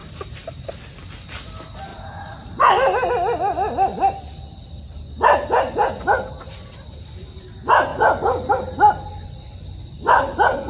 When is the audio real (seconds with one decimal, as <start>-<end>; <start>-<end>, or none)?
0.6-1.9; 3.1-10.7

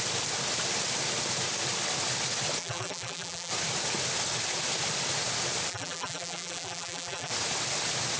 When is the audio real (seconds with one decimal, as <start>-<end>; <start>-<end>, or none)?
0.0-2.6; 3.5-5.7; 7.3-8.2

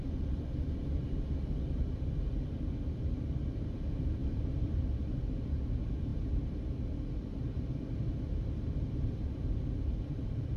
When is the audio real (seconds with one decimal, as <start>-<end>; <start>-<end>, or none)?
0.0-4.2; 4.8-7.3; 8.2-10.6

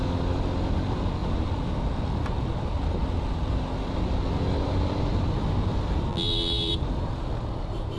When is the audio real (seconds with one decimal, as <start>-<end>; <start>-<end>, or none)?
0.0-6.1; 6.7-8.0